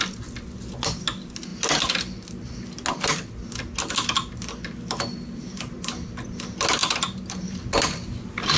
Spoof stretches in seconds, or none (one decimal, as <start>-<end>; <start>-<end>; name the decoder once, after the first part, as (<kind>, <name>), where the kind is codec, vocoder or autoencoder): none